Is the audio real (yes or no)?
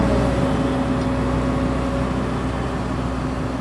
yes